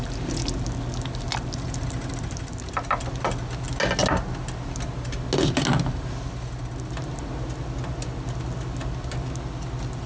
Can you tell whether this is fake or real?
real